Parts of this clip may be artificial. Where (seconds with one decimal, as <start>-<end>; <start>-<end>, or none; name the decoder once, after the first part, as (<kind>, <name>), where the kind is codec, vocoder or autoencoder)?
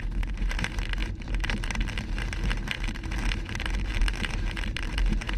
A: 0.0-5.4 (vocoder, BigVGAN v2)